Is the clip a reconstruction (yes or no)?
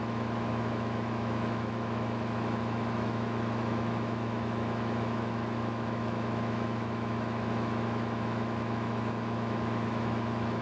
yes